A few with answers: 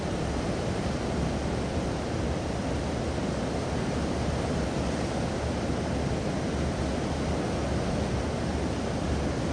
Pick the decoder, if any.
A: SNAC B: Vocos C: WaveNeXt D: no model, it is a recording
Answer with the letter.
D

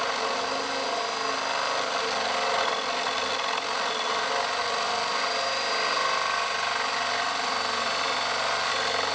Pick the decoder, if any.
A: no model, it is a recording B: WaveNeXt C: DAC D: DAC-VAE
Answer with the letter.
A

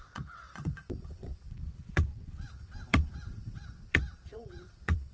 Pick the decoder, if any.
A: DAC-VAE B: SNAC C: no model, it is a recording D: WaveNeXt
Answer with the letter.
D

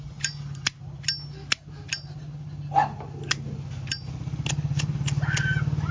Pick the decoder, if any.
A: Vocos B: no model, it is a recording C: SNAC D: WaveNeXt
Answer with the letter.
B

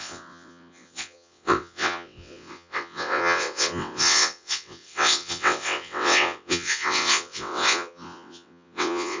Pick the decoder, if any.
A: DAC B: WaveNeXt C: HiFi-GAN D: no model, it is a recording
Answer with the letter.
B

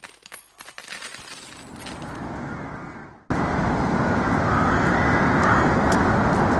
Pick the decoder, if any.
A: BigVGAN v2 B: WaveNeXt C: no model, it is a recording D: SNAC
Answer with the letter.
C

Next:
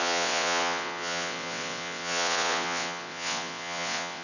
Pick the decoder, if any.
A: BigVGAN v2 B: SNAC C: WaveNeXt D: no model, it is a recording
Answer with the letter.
C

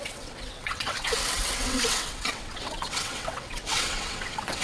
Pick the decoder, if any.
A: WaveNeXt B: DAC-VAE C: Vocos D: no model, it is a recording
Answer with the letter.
A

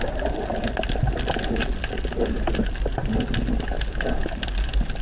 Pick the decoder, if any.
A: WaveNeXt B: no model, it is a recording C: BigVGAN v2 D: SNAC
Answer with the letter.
B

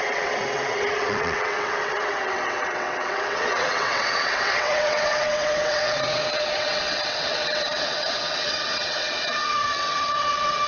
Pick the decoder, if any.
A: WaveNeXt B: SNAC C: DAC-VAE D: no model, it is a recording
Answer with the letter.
A